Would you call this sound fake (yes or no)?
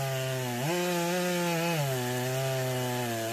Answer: no